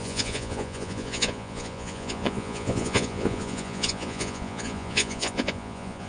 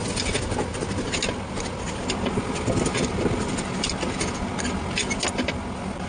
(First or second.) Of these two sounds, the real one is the second